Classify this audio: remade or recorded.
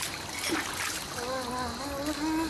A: recorded